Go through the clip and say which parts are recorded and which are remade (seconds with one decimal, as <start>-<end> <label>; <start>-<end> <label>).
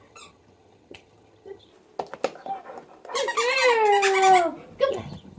0.0-1.7 remade; 1.7-4.9 recorded; 4.9-5.4 remade